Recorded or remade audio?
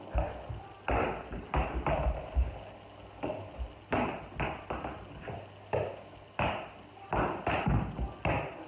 recorded